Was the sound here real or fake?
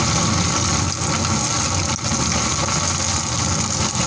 real